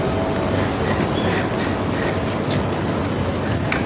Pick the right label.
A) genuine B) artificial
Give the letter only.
A